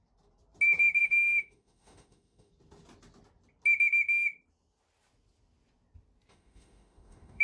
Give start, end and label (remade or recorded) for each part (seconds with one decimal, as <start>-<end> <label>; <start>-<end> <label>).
0.0-1.0 recorded; 1.0-2.5 remade; 2.5-6.3 recorded; 6.3-7.4 remade